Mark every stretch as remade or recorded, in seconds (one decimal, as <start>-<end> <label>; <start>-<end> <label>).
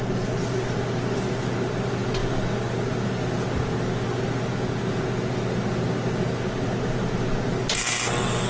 0.0-8.5 recorded